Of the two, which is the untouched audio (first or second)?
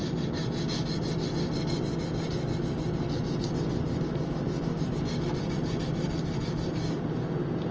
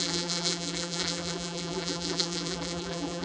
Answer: first